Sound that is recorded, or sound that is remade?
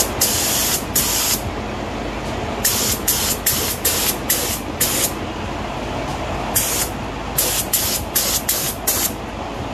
recorded